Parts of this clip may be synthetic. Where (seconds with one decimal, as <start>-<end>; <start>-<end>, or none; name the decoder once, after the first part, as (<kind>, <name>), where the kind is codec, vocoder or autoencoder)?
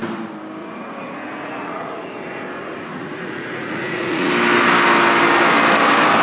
0.6-4.3 (vocoder, Vocos)